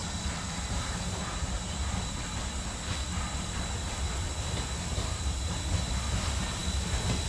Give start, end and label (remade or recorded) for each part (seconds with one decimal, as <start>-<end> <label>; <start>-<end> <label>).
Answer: 0.0-2.2 remade; 2.2-5.1 recorded; 5.1-5.6 remade; 5.6-7.3 recorded